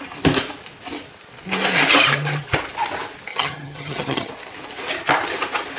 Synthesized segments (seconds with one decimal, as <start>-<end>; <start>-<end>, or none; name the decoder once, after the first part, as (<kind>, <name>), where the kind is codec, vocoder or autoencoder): 3.3-4.3 (vocoder, HiFi-GAN)